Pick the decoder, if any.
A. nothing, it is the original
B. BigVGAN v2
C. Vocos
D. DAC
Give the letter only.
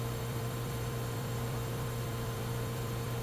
B